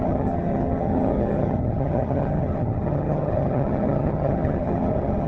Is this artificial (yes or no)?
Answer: yes